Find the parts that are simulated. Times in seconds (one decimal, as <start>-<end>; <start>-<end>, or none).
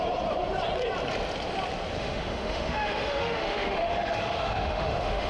2.0-5.3